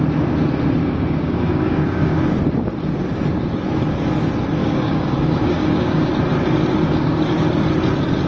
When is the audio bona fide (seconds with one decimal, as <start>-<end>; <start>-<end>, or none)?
0.0-0.8; 2.2-4.6; 6.1-8.3